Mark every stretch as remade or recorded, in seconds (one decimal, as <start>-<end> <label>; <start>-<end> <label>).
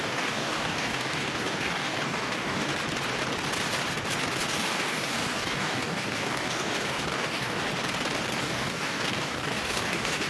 0.0-2.7 remade; 2.7-4.5 recorded; 4.5-7.7 remade; 7.7-8.4 recorded; 8.4-10.3 remade